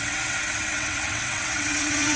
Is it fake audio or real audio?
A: fake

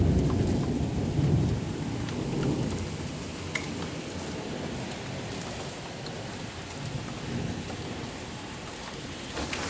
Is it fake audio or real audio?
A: real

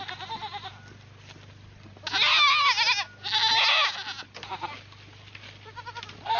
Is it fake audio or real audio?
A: real